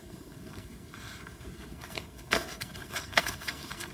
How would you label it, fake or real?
fake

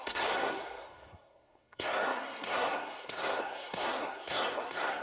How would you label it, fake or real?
fake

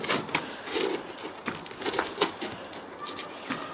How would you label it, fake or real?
real